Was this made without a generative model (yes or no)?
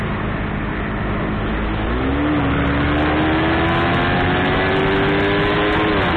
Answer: yes